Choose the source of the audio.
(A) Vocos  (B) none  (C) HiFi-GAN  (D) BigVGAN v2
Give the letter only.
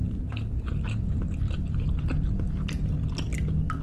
B